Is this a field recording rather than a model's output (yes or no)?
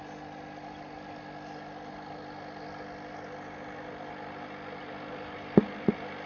yes